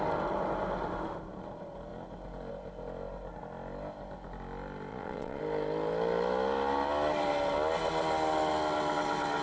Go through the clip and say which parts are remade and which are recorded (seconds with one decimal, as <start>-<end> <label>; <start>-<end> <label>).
0.0-4.9 recorded; 4.9-5.4 remade; 5.4-9.4 recorded